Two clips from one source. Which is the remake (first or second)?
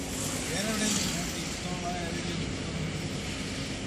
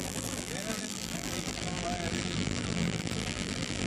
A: second